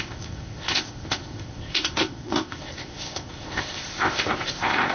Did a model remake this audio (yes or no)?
yes